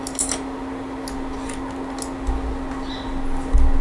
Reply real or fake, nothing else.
real